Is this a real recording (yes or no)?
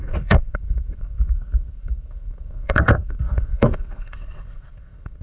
no